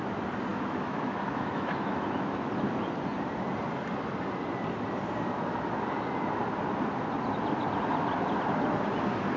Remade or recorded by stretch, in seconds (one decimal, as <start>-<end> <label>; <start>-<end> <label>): 0.0-0.5 recorded; 0.5-2.5 remade; 2.5-9.4 recorded